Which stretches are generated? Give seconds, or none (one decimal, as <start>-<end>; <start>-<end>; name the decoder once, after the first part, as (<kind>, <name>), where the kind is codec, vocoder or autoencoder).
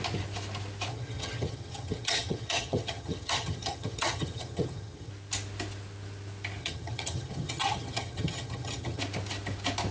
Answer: 0.9-5.1 (vocoder, HiFi-GAN); 6.6-9.0